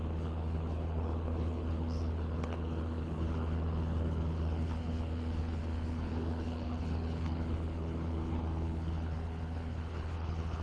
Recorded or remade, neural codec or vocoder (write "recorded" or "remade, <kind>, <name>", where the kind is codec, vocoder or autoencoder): remade, codec, HILCodec